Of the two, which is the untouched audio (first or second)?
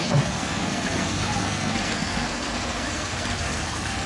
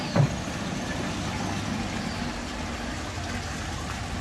second